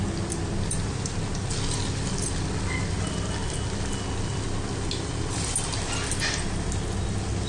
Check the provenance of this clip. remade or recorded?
recorded